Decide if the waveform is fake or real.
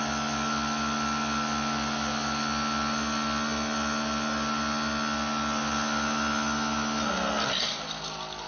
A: real